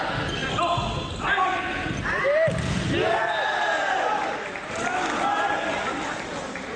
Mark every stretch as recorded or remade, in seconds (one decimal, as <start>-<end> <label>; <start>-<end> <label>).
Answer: 0.0-6.8 recorded